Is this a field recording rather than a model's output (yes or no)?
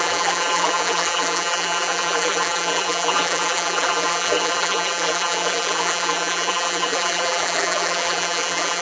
no